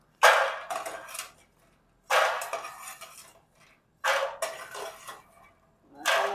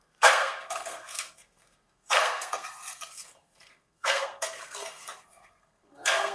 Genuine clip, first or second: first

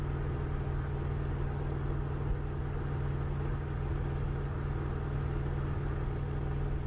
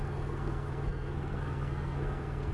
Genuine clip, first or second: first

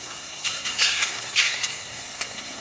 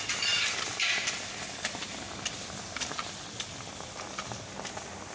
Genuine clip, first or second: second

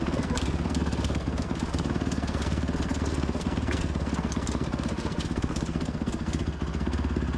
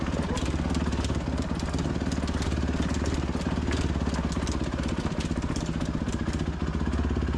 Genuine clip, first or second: second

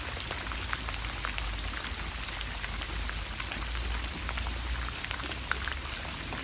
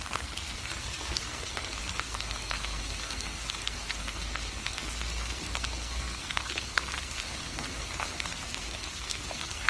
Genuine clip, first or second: first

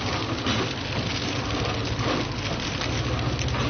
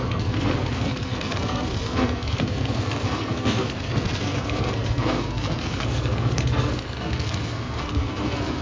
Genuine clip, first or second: first